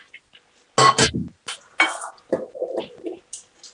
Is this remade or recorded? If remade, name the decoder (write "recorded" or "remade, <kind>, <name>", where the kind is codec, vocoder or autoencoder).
recorded